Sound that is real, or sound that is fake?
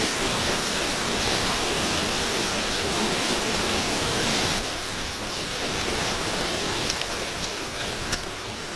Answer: fake